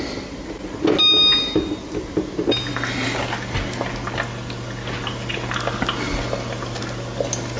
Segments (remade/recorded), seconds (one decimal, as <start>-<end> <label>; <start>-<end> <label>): 0.0-7.6 recorded